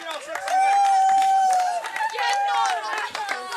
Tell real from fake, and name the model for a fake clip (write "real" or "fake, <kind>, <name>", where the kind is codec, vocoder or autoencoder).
real